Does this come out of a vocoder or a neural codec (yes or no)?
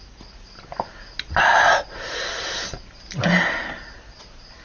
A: no